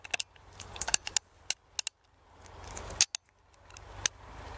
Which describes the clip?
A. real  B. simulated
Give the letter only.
A